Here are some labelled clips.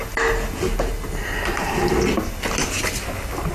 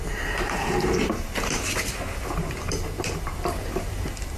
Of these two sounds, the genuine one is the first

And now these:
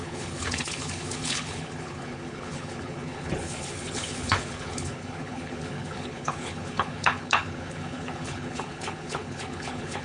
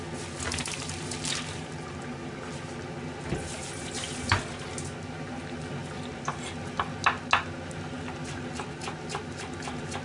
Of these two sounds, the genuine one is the second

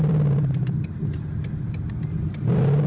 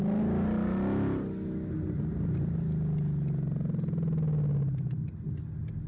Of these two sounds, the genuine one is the second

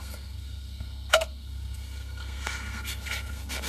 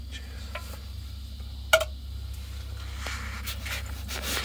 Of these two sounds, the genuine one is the second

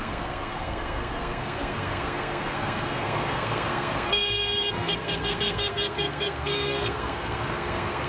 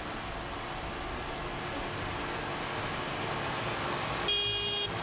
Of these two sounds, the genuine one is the second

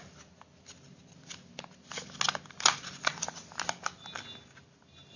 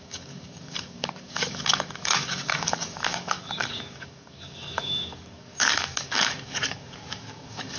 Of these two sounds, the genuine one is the first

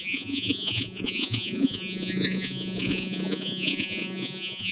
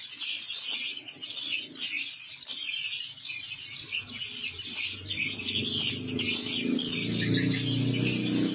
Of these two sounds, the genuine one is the second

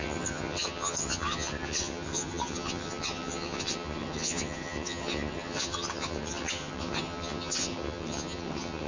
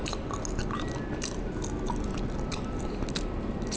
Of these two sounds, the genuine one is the second